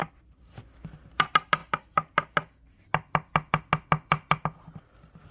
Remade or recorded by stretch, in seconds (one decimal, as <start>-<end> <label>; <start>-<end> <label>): 0.0-0.8 remade; 0.8-5.3 recorded